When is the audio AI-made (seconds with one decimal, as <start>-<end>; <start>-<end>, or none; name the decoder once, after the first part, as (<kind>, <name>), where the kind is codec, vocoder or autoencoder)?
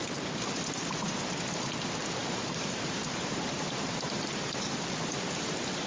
2.2-5.9 (vocoder, BigVGAN v2)